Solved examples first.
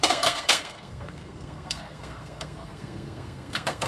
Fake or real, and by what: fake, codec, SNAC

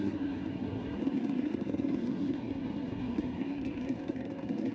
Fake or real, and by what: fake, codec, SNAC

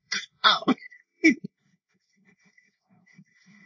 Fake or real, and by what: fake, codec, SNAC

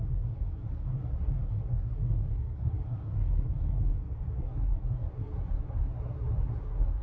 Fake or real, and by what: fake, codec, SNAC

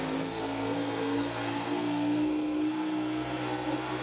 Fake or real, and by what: fake, codec, SNAC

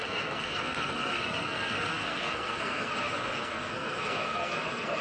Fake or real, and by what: fake, codec, SNAC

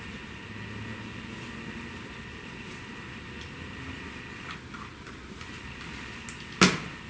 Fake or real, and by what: real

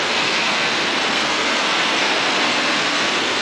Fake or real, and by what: fake, codec, SNAC